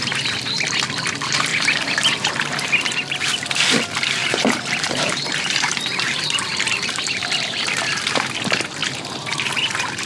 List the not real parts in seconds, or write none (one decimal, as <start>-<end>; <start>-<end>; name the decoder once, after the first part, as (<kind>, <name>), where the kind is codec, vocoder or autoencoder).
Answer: 1.5-2.7 (vocoder, BigVGAN v2); 4.2-7.0; 8.8-9.4